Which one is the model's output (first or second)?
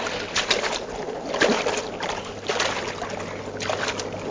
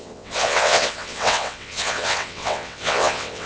second